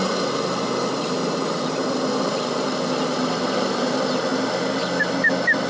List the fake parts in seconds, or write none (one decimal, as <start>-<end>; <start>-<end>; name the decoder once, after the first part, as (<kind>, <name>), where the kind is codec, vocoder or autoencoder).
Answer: 0.8-2.3 (vocoder, BigVGAN v2)